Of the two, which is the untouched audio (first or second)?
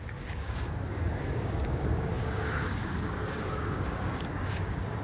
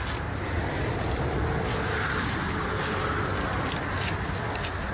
second